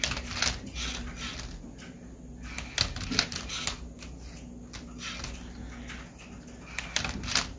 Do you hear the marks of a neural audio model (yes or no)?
no